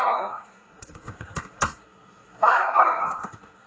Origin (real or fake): fake